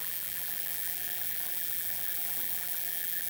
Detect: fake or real fake